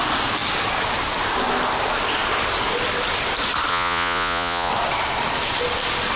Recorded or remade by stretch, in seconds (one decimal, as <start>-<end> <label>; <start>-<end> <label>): 0.0-3.7 recorded; 3.7-4.7 remade; 4.7-6.2 recorded